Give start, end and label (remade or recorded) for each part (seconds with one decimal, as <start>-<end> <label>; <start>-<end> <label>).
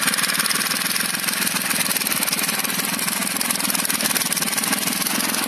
0.0-5.5 recorded